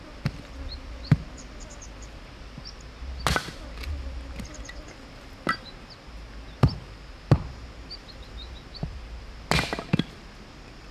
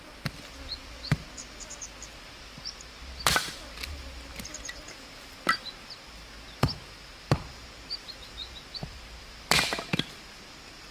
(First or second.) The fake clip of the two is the second